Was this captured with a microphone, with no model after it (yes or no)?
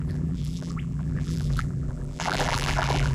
no